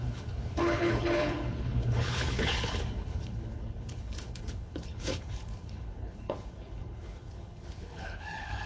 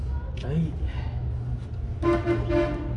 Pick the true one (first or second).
second